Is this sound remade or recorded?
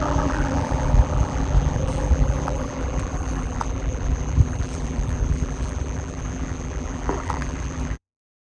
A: remade